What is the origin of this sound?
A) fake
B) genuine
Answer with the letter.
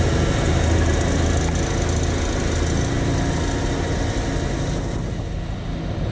B